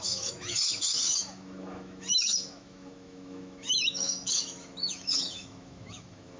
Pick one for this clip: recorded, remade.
remade